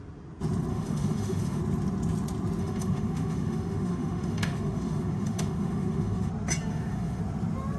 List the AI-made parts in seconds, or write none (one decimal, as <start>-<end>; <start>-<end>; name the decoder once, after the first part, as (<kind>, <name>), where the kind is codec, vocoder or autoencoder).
0.7-1.6 (autoencoder, DAC-VAE); 2.6-6.3; 6.7-7.2